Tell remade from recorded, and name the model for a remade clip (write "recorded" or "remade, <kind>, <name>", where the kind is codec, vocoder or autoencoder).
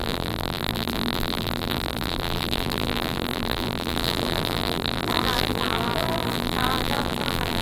remade, vocoder, BigVGAN v2